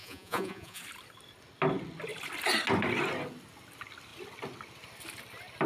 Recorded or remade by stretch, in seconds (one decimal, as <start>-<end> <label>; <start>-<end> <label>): 0.0-0.8 remade; 0.8-5.7 recorded